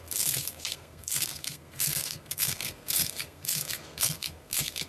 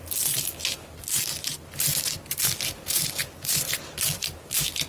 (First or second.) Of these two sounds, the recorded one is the second